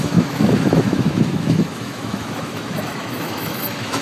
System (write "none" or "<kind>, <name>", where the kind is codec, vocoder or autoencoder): autoencoder, DAC-VAE